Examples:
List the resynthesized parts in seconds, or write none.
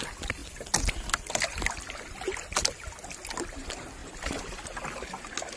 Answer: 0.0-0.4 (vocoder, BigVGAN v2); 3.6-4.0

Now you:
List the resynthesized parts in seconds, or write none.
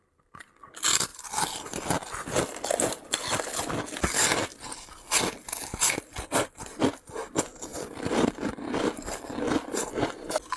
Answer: 1.1-1.9 (vocoder, BigVGAN v2); 7.7-10.6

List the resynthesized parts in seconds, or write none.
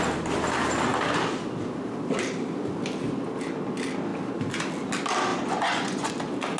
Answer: 5.3-6.1 (vocoder, Vocos)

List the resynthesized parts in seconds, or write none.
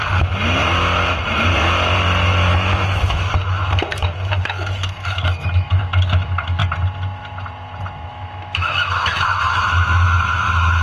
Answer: 2.5-6.6 (autoencoder, DAC-VAE); 8.1-10.8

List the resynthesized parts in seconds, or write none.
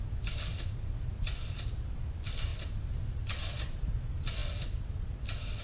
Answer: 0.0-5.6 (vocoder, BigVGAN v2)